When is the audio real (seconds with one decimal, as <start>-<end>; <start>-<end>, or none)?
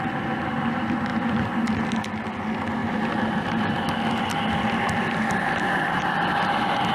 0.0-1.1; 1.7-6.9